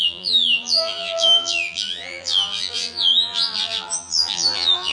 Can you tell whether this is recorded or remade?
remade